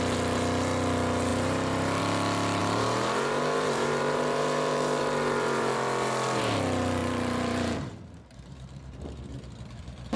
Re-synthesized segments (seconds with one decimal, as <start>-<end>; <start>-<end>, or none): 1.3-2.0; 2.6-6.4; 7.0-9.1